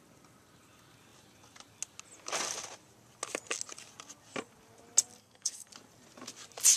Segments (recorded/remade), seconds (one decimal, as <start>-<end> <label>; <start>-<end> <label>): 0.0-5.2 recorded; 5.2-5.7 remade; 5.7-6.8 recorded